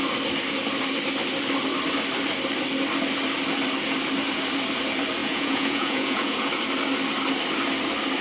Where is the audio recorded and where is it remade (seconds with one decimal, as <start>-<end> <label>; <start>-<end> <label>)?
0.0-5.2 recorded; 5.2-6.5 remade; 6.5-8.2 recorded